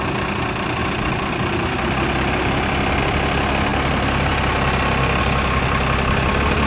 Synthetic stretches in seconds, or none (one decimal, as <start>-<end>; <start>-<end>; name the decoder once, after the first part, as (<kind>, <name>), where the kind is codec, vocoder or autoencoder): 0.8-3.0 (vocoder, BigVGAN v2); 3.7-5.2